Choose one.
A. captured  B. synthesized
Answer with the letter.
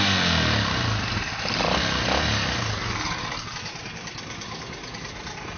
A